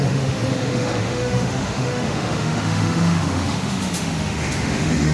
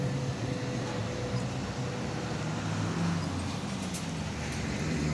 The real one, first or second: second